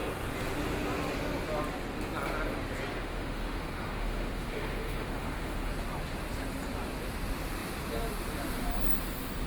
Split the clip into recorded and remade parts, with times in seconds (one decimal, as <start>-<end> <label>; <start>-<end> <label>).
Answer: 0.0-2.9 recorded; 2.9-5.7 remade; 5.7-9.5 recorded